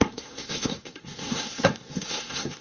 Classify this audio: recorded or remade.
remade